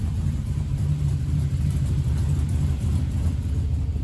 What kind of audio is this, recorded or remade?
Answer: remade